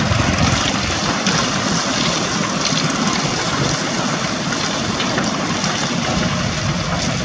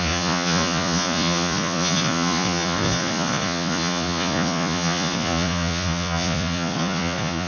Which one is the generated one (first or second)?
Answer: second